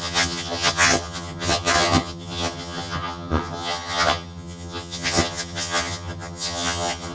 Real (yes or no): no